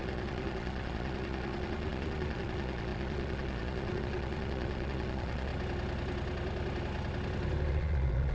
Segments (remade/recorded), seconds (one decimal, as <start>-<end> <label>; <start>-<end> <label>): 0.0-5.5 remade; 5.5-7.7 recorded; 7.7-8.3 remade